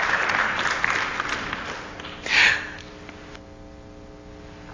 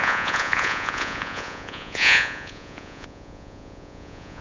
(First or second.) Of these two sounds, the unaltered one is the first